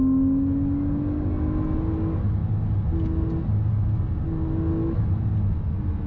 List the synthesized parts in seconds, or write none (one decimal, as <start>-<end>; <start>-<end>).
none